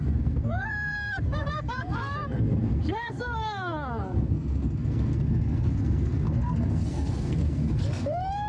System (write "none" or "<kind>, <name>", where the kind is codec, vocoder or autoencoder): codec, SNAC